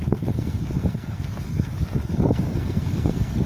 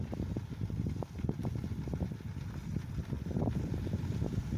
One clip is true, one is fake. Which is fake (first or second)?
first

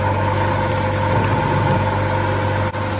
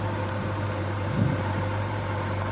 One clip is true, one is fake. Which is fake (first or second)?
second